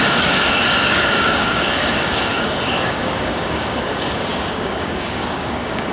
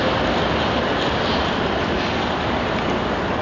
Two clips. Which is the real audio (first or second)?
second